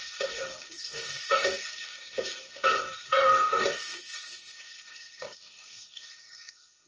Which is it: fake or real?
fake